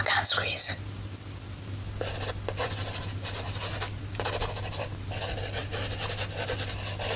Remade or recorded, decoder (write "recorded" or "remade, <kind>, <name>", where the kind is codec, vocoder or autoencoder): recorded